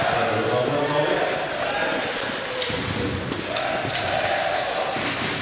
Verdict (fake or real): real